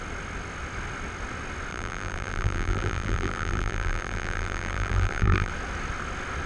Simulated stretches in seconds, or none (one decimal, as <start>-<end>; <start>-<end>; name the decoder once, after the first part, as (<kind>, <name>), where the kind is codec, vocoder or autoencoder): 1.7-5.5 (vocoder, BigVGAN v2)